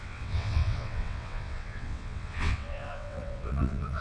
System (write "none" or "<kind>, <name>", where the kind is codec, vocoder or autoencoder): vocoder, WaveNeXt